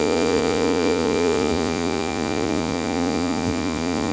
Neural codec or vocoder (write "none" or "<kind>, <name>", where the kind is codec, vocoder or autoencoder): vocoder, Vocos